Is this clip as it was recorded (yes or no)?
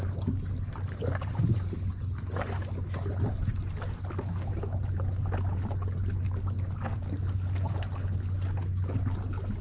yes